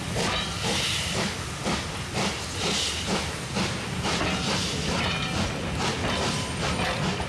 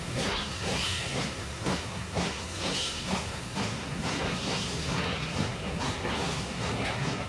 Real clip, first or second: first